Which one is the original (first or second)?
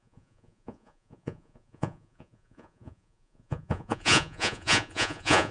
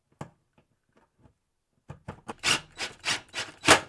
second